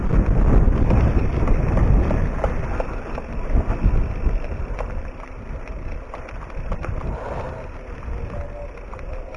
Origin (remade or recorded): recorded